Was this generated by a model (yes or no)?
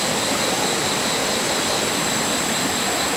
no